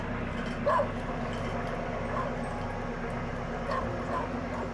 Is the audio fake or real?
real